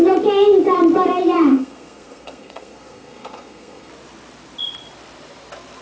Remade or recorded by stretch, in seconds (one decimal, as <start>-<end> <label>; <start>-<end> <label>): 0.0-1.5 recorded; 1.5-3.9 remade; 3.9-5.8 recorded